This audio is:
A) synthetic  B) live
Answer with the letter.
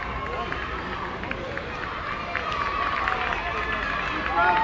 B